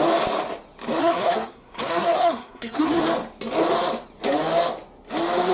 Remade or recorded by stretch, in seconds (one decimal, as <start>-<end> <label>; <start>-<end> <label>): 0.0-1.0 recorded; 1.0-3.0 remade; 3.0-5.5 recorded